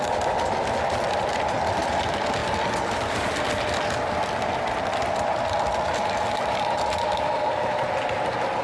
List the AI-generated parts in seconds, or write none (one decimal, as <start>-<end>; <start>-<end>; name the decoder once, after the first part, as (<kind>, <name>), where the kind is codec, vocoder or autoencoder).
none